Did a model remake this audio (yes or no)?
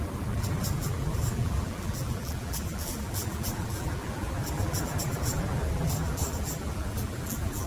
yes